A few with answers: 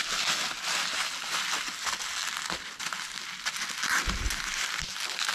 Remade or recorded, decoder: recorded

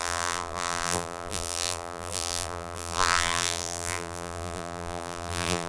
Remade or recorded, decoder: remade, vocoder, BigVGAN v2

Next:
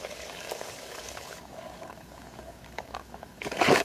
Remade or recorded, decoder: remade, codec, DAC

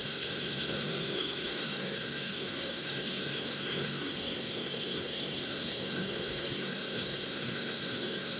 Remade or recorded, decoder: remade, codec, SNAC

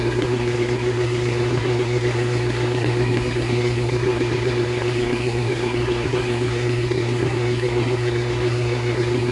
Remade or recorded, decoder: remade, codec, SNAC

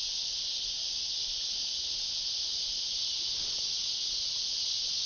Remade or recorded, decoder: recorded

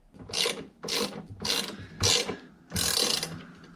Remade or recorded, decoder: recorded